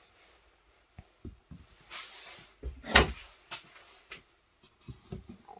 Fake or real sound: real